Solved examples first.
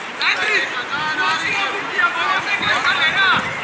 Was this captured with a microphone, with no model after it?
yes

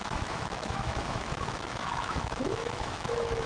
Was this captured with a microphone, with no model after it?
no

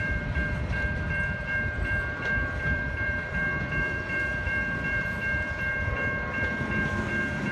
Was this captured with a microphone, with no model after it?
no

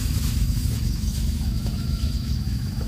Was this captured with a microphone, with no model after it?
no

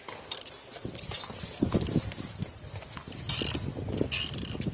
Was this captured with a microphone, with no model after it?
yes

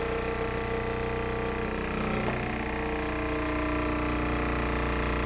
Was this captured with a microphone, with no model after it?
yes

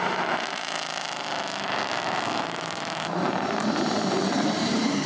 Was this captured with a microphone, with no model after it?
no